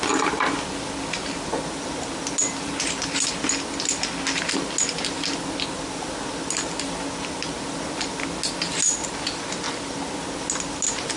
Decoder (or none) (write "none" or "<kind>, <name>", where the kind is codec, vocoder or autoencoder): none